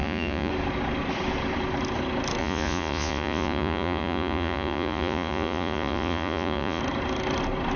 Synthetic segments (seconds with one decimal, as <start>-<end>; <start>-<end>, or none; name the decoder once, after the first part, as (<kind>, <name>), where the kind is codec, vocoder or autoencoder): 0.0-0.5 (vocoder, Vocos); 2.4-6.8

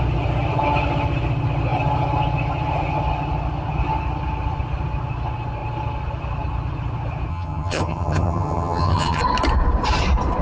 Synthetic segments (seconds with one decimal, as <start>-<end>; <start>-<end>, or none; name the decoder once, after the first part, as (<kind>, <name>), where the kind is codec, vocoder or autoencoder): 7.3-9.2 (vocoder, HiFi-GAN)